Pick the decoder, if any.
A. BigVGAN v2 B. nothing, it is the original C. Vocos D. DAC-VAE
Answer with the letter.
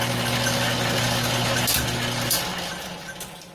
B